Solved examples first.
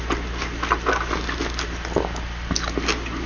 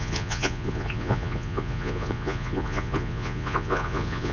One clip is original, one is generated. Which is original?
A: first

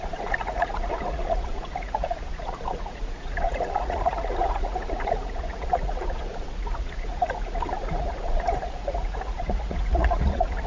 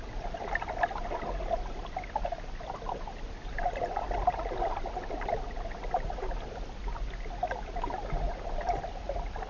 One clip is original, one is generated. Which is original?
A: second